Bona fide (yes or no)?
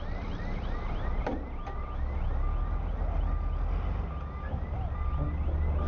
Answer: yes